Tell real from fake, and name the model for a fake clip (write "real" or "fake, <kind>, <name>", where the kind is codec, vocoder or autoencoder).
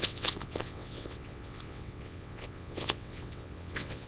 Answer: fake, vocoder, WaveNeXt